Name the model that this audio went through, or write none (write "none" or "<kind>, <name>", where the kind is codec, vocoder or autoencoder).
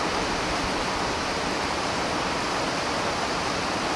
none